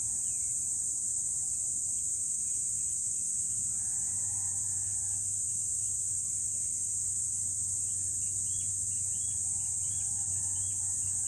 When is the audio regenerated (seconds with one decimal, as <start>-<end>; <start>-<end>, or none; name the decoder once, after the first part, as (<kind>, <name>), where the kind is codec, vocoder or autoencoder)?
none